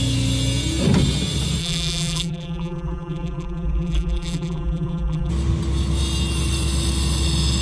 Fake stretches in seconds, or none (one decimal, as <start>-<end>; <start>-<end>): 1.6-5.3